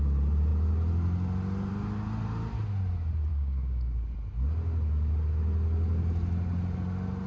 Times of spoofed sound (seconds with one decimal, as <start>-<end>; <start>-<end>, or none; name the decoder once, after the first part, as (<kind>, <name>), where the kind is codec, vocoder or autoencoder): 3.3-4.1 (codec, DAC)